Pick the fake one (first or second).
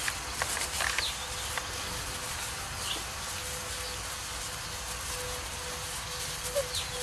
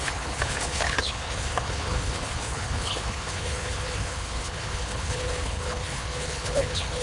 second